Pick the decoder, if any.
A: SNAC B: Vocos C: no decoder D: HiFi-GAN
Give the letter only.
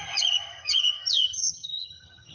D